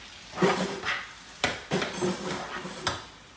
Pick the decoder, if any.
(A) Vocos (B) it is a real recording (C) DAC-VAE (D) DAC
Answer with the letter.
B